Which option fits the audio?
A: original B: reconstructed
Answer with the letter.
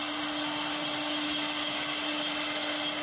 A